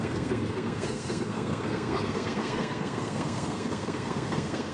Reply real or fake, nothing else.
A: fake